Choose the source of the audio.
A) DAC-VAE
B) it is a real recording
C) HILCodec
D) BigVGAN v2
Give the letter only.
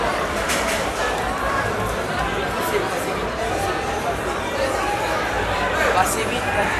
D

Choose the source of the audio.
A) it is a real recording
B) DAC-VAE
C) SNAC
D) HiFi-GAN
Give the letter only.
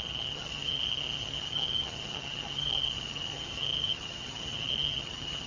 D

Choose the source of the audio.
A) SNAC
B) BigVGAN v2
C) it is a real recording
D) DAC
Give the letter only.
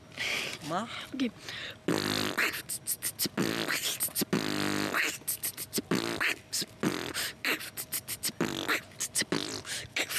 C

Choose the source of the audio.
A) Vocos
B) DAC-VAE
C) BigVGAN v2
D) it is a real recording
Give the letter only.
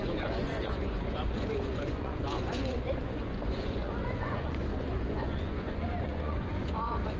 A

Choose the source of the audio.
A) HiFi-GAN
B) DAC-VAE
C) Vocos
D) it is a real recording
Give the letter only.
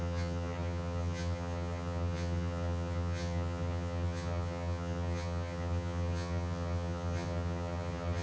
A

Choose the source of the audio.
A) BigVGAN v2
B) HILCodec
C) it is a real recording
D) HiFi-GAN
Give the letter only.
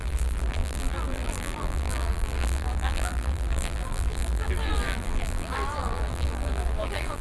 A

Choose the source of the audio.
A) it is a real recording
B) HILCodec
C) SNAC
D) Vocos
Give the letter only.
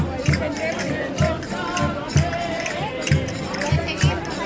A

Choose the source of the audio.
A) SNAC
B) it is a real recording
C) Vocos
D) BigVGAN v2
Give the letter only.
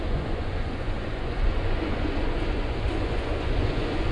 C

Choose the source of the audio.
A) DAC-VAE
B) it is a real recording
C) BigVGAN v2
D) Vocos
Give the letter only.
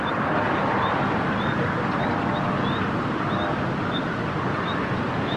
C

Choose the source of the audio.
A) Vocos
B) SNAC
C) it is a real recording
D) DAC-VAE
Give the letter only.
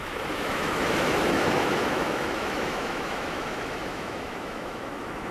D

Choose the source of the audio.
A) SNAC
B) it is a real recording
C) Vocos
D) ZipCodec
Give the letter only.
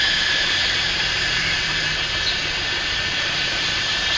B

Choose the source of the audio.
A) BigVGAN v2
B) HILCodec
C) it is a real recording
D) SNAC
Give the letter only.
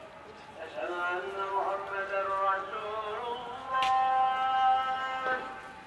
C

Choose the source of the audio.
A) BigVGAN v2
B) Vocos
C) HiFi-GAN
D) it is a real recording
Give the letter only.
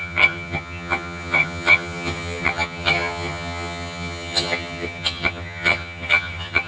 C